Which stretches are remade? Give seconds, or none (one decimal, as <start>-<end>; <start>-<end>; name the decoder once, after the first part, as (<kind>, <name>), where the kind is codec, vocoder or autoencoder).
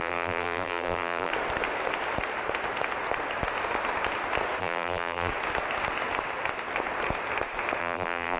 0.0-1.3 (vocoder, BigVGAN v2); 4.6-5.3; 7.8-8.4